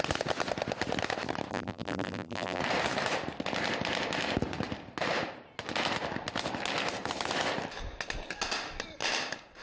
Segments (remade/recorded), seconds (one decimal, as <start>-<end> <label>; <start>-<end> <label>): 0.0-1.5 recorded; 1.5-2.6 remade; 2.6-9.6 recorded